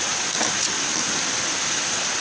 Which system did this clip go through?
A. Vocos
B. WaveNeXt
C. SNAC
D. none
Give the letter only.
D